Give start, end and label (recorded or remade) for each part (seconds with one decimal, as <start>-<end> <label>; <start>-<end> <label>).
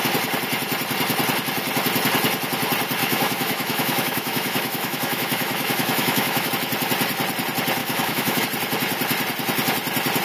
0.0-3.0 recorded; 3.0-6.5 remade; 6.5-7.8 recorded; 7.8-8.4 remade; 8.4-10.2 recorded